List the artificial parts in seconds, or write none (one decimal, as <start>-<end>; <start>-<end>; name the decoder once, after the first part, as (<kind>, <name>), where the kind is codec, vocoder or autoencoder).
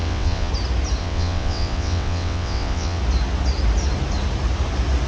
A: 0.0-0.5 (vocoder, WaveNeXt); 1.0-3.0